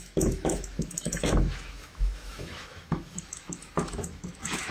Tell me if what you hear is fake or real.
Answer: fake